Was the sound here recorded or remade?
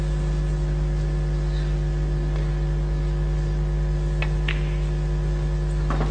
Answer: recorded